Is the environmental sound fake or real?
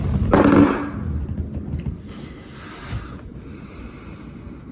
real